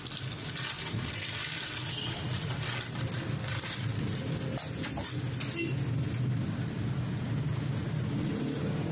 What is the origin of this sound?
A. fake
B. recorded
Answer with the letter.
B